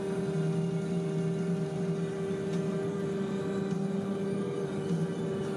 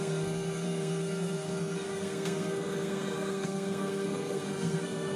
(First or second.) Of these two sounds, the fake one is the second